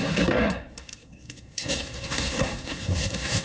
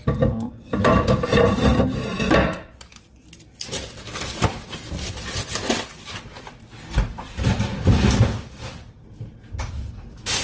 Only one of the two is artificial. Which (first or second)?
first